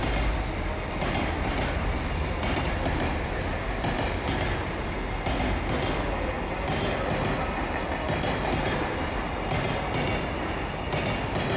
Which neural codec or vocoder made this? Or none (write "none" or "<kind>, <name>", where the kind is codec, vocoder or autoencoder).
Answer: none